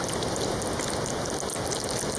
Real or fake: real